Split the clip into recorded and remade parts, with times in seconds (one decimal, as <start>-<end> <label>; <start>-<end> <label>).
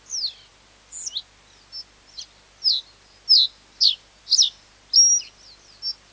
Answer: 0.0-6.1 recorded